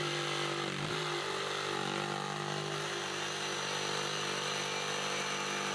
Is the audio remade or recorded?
recorded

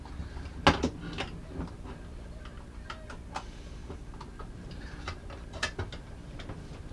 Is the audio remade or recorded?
recorded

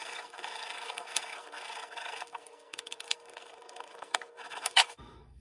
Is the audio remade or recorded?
remade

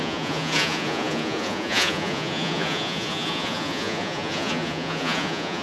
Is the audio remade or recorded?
remade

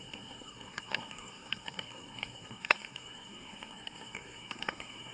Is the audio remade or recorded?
remade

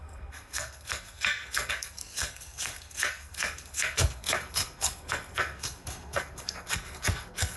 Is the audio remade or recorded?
remade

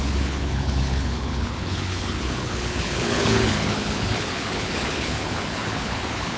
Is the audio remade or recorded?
remade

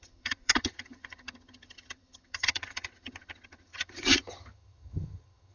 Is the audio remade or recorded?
remade